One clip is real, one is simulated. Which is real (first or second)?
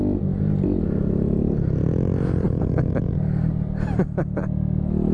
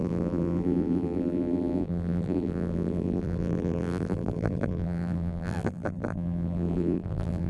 first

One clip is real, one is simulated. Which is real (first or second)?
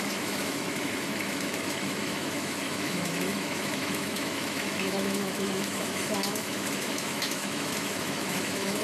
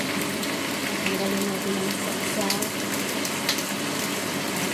second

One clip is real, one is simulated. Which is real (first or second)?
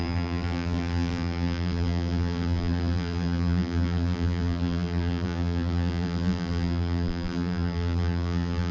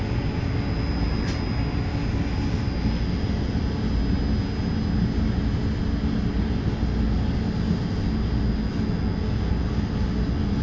second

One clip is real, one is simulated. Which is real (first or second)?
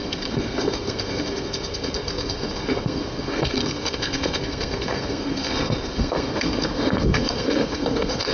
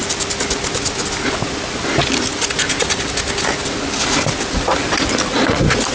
second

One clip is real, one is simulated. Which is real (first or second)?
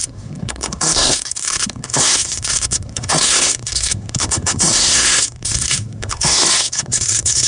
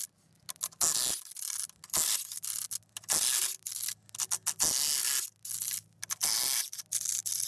second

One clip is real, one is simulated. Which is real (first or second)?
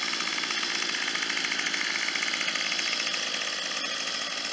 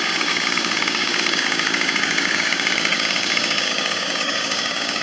first